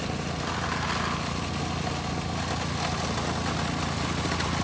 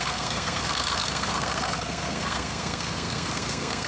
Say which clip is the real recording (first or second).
first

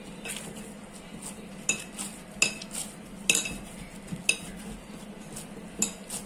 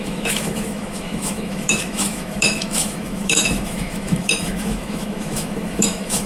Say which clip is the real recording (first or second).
first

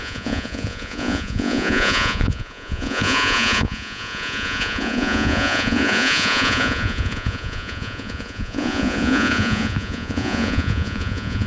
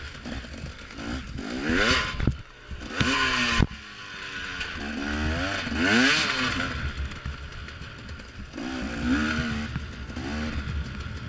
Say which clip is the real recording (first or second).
second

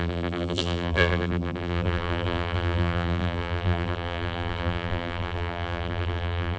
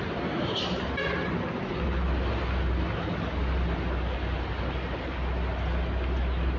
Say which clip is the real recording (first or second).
second